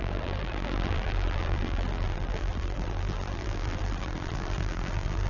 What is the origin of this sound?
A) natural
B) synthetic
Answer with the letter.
B